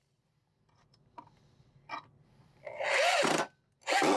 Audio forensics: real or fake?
real